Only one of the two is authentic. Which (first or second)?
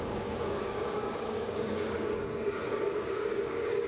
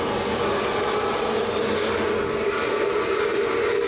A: second